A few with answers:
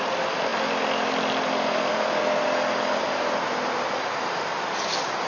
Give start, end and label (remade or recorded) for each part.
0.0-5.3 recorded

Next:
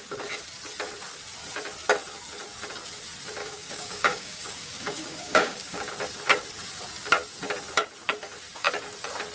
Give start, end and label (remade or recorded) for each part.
0.0-3.4 recorded; 3.4-5.9 remade; 5.9-9.3 recorded

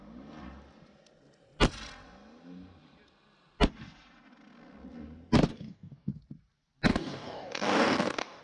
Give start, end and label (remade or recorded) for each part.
0.0-5.5 recorded; 5.5-6.2 remade; 6.2-6.9 recorded; 6.9-8.4 remade